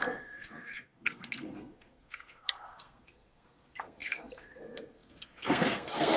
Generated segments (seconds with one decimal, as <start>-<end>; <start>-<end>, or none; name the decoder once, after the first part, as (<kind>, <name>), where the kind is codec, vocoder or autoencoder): 0.0-6.2 (codec, SNAC)